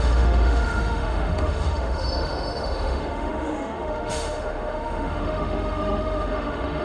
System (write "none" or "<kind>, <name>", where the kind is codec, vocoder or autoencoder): autoencoder, DAC-VAE